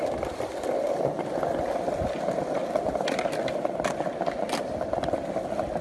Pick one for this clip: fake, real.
real